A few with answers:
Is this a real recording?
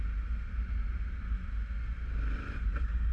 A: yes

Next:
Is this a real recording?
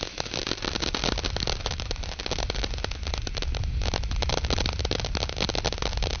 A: yes